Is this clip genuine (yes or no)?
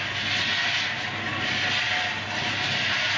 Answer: yes